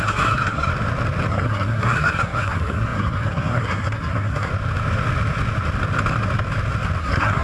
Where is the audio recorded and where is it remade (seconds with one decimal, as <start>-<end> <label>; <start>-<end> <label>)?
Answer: 0.0-0.7 remade; 0.7-1.3 recorded; 1.3-4.5 remade; 4.5-7.0 recorded; 7.0-7.4 remade